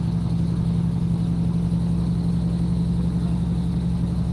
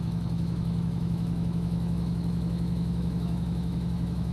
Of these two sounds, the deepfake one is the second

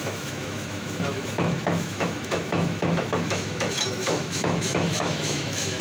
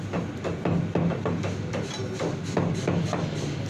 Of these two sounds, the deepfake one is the first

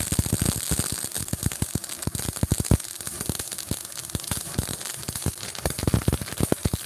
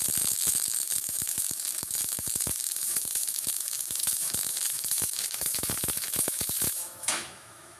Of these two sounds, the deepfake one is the second